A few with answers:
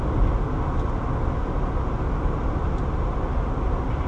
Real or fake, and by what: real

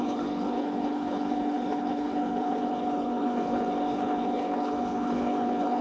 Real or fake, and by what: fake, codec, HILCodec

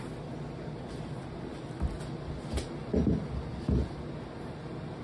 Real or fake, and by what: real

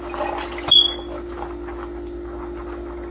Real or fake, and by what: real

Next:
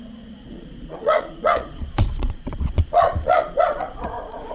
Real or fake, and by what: fake, vocoder, Vocos